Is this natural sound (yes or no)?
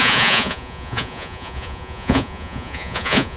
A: no